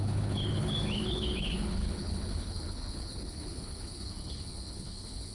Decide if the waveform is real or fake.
fake